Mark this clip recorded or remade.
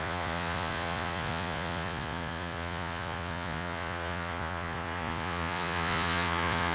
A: remade